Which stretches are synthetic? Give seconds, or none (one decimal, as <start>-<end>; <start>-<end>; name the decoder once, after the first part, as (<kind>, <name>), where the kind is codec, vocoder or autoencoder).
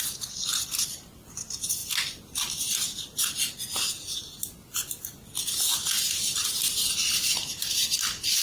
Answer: none